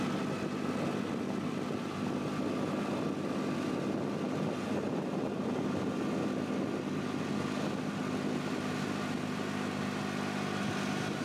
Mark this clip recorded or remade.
recorded